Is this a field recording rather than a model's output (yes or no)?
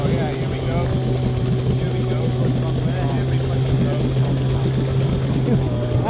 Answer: yes